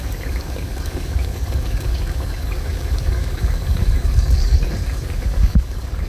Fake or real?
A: fake